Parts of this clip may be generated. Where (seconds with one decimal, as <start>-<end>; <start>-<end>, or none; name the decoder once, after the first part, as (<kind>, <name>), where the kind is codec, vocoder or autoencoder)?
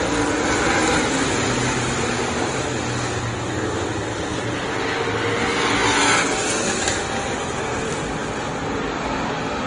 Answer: 8.2-9.7 (vocoder, BigVGAN v2)